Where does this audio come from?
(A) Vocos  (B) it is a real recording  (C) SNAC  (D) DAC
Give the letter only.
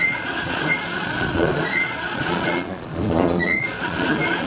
A